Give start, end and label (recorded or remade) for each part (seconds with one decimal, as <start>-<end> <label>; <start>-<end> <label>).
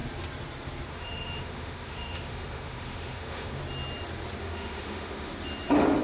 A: 0.0-0.9 recorded; 0.9-3.6 remade; 3.6-4.4 recorded; 4.4-5.3 remade; 5.3-6.0 recorded